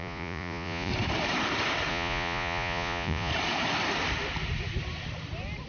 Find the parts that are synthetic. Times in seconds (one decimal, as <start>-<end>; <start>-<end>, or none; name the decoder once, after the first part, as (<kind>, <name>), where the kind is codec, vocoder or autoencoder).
0.0-0.9 (vocoder, Vocos); 1.9-3.3